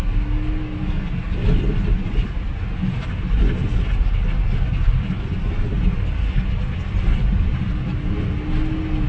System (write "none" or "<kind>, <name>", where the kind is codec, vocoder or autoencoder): none